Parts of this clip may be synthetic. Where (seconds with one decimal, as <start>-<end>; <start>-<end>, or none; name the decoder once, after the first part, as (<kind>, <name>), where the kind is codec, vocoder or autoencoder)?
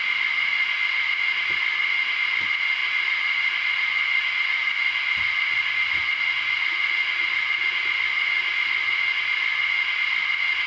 0.5-1.1 (vocoder, Vocos); 2.8-7.6